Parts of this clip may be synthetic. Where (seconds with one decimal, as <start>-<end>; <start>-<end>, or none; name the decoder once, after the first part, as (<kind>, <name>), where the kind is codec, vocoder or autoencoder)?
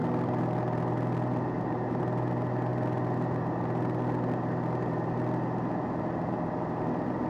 none